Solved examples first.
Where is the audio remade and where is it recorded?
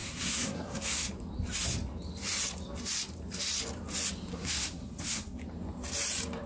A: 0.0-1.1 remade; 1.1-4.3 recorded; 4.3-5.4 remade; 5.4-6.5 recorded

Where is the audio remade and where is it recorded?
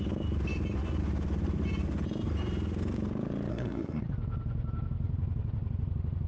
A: 0.0-3.5 recorded; 3.5-4.0 remade; 4.0-6.3 recorded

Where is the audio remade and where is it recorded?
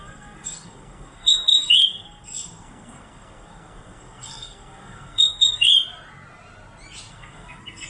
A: 0.0-5.7 remade; 5.7-7.1 recorded; 7.1-7.9 remade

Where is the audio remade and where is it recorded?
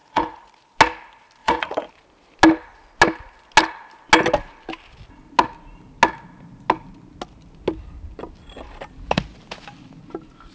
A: 0.0-0.5 remade; 0.5-1.4 recorded; 1.4-1.9 remade; 1.9-10.5 recorded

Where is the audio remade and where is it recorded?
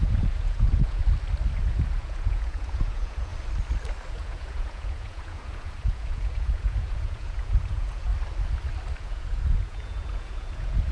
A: 0.0-1.0 remade; 1.0-1.6 recorded; 1.6-3.3 remade; 3.3-4.1 recorded; 4.1-8.1 remade; 8.1-9.0 recorded; 9.0-10.9 remade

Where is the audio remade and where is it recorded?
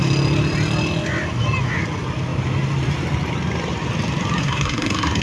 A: 0.0-4.4 recorded; 4.4-5.2 remade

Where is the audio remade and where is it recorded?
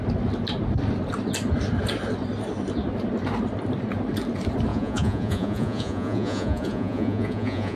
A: 0.0-4.7 recorded; 4.7-7.8 remade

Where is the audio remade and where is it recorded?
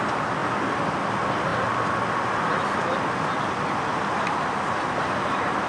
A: 0.0-5.7 recorded